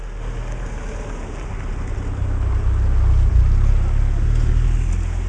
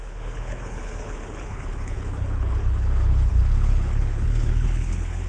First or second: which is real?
first